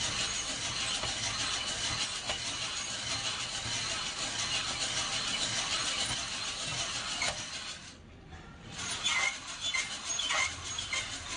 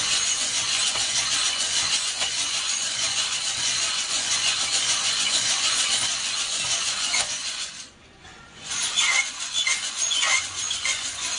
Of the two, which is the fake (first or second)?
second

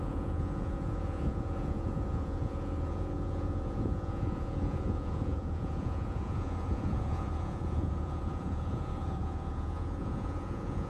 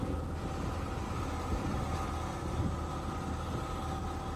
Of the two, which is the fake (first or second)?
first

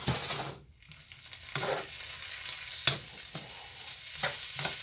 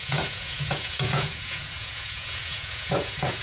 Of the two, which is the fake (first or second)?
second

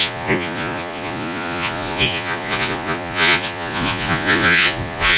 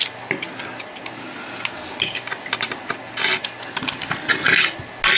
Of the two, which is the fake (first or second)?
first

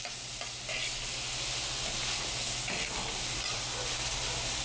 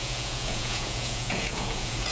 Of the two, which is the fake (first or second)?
second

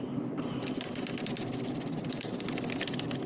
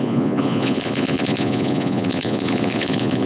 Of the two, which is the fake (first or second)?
second